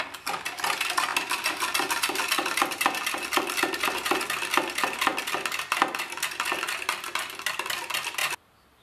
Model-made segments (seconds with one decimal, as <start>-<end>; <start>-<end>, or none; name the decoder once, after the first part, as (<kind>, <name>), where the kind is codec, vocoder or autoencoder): 1.1-4.2 (vocoder, BigVGAN v2)